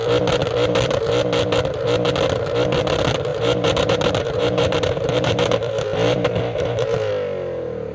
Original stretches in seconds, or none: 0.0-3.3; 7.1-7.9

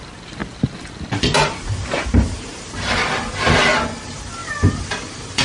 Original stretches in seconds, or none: 0.0-4.4